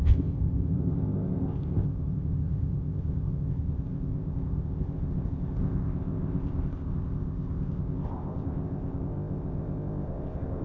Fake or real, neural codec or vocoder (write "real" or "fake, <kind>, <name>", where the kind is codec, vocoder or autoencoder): fake, codec, ZipCodec